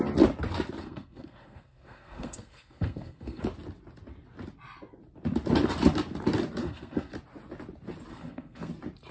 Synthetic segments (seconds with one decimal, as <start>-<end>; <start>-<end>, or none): 0.8-3.4; 6.6-7.1; 8.1-8.7